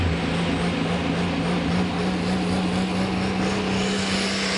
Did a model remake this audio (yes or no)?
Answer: no